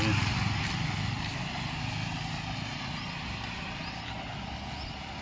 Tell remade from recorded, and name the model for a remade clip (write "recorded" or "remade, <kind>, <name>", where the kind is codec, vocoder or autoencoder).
recorded